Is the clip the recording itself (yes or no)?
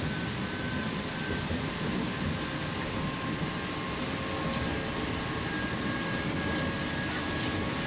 yes